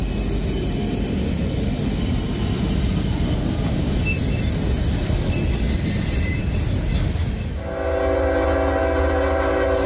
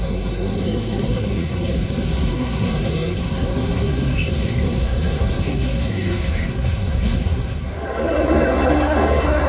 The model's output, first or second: second